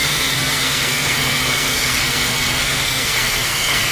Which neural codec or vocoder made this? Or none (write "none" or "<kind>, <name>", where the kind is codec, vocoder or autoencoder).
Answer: codec, SNAC